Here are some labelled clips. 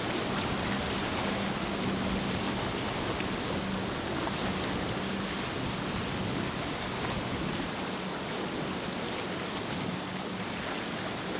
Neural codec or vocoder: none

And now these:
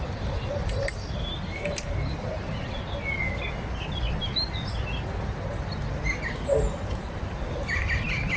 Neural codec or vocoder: none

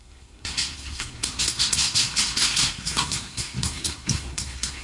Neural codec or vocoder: codec, SNAC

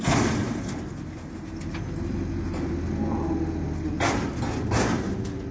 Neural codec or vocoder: none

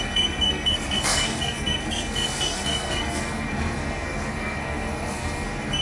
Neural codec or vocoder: codec, SNAC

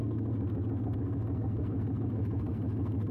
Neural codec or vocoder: codec, SNAC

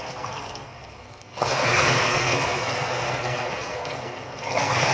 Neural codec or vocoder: codec, SNAC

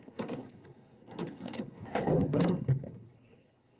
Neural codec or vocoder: codec, SNAC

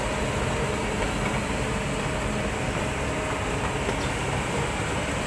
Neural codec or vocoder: none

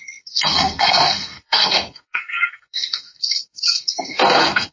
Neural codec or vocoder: codec, SNAC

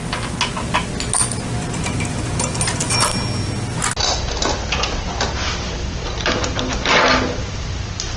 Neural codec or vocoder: none